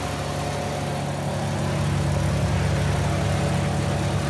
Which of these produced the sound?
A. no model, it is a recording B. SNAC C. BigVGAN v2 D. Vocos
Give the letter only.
A